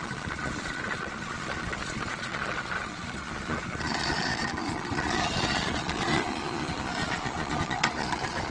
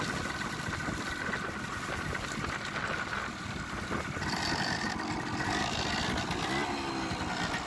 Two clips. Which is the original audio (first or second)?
second